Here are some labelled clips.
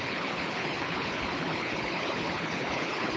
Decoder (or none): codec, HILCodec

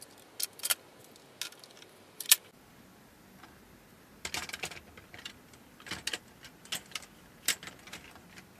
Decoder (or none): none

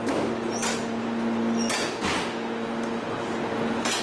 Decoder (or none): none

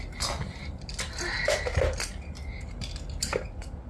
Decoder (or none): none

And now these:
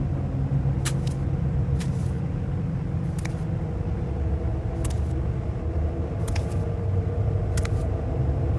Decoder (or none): none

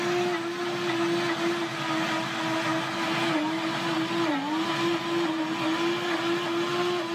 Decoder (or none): none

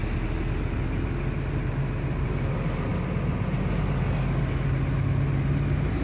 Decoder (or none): none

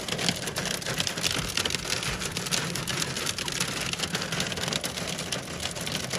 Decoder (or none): none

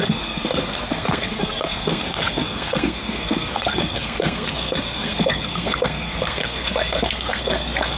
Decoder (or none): codec, SNAC